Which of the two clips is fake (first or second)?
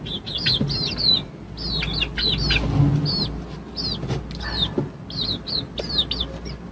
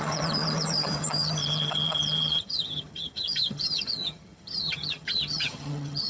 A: second